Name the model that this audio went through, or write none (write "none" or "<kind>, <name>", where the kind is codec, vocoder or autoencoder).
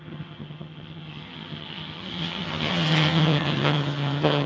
vocoder, HiFi-GAN